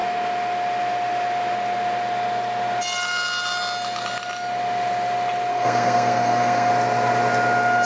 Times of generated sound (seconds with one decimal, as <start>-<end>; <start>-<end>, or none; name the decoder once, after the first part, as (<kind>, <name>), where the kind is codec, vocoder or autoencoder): 5.5-6.7 (codec, SNAC)